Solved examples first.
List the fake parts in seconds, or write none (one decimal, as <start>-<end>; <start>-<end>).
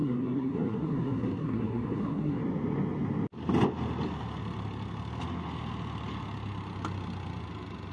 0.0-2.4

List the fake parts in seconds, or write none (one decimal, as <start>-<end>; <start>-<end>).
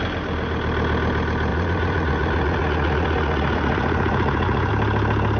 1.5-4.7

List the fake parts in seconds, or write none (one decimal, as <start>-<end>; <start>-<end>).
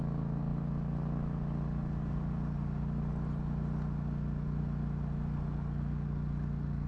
none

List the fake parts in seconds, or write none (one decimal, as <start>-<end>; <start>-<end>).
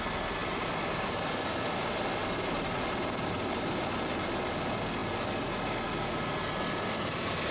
0.4-1.6; 2.2-4.1